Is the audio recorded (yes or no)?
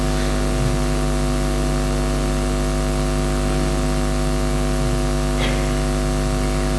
yes